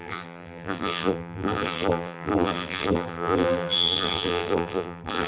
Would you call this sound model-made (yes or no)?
yes